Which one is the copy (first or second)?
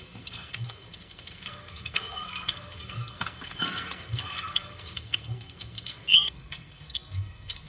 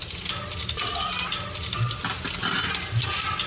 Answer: first